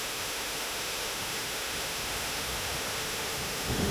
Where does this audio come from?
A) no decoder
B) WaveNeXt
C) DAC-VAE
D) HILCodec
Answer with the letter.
C